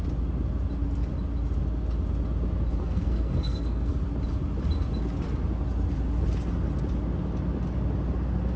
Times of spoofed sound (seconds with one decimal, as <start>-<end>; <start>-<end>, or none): 2.8-3.9